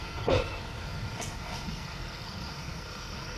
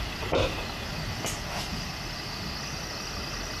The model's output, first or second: first